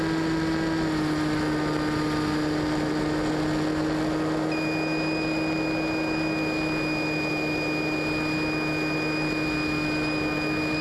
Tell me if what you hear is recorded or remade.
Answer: recorded